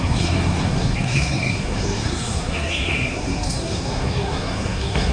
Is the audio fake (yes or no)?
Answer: yes